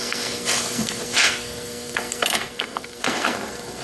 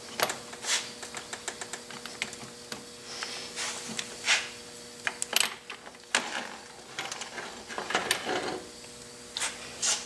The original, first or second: second